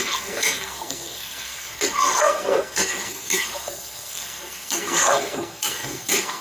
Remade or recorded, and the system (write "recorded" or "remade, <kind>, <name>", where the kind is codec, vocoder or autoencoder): remade, codec, SNAC